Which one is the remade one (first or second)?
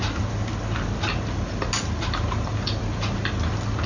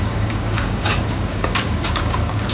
second